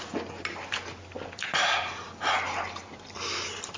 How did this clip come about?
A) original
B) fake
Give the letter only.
A